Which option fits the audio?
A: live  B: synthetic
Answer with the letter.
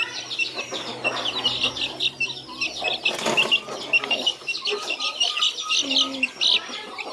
A